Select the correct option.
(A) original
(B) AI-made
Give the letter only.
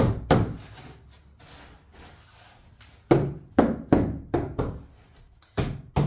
A